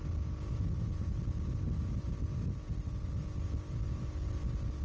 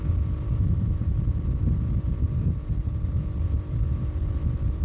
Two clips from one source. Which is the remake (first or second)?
second